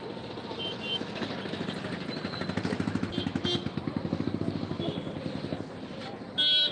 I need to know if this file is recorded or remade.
recorded